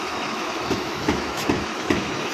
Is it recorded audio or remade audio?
remade